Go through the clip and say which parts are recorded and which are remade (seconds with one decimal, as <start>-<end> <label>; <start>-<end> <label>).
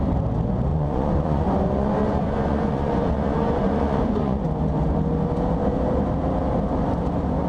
0.0-0.7 recorded; 0.7-4.4 remade; 4.4-7.5 recorded